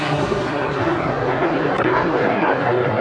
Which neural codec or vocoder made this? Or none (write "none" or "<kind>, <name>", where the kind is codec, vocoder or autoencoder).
codec, SNAC